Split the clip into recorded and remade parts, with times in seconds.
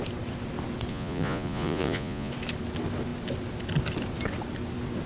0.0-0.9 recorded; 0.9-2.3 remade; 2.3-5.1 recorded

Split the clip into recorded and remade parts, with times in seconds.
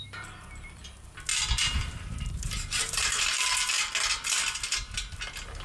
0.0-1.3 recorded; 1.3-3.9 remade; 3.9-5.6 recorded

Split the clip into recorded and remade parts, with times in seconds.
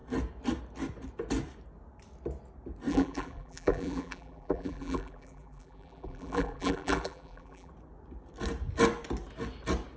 0.0-2.9 recorded; 2.9-7.7 remade; 7.7-10.0 recorded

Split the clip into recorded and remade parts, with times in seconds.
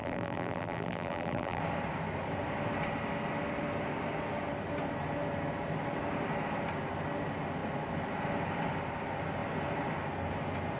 0.0-1.6 remade; 1.6-10.8 recorded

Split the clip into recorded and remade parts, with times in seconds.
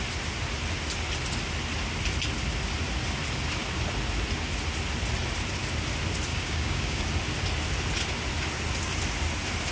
0.0-6.3 recorded; 6.3-7.0 remade; 7.0-9.7 recorded